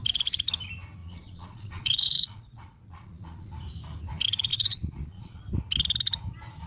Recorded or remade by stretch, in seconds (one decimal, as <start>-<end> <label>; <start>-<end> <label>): 0.0-1.0 recorded; 1.0-3.5 remade; 3.5-4.5 recorded; 4.5-5.4 remade; 5.4-6.7 recorded